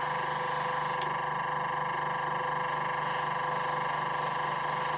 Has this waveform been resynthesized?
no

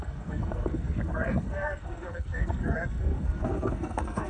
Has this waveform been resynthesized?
yes